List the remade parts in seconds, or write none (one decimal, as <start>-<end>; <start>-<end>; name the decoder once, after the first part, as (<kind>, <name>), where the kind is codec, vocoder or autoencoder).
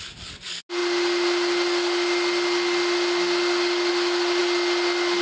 none